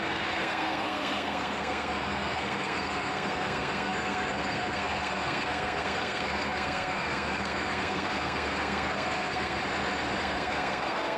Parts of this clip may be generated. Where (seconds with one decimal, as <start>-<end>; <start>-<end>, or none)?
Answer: 0.0-9.6; 10.2-11.2